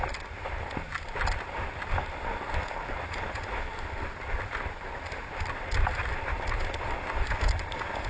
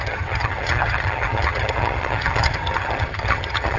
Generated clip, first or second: second